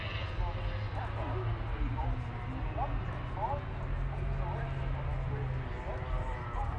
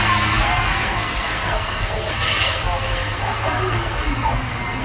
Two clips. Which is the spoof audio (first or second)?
second